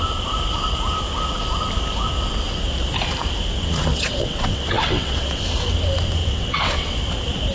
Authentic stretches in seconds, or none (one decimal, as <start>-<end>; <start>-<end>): 0.0-3.9; 5.4-6.2; 6.9-7.5